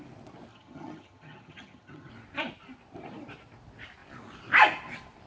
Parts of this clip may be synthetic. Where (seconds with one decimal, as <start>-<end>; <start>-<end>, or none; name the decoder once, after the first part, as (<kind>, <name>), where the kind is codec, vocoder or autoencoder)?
0.5-2.1 (vocoder, HiFi-GAN)